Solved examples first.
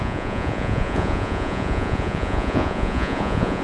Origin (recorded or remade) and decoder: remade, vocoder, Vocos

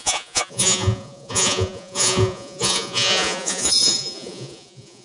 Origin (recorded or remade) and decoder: remade, vocoder, Vocos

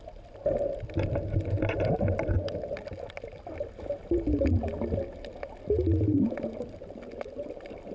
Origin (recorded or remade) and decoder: recorded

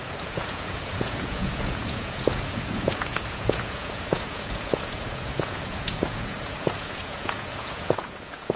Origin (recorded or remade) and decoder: remade, vocoder, Vocos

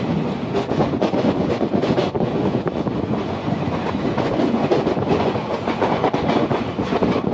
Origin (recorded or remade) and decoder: remade, vocoder, Vocos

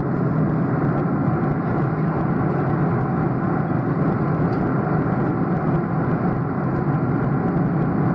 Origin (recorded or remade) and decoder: recorded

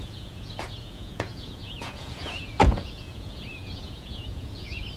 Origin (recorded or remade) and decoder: remade, vocoder, Vocos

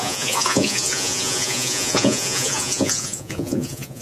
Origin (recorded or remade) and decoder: remade, vocoder, Vocos